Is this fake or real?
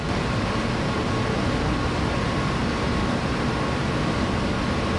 real